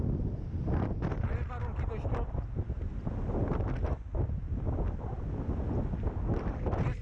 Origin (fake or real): real